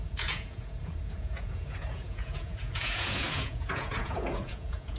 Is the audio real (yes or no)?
no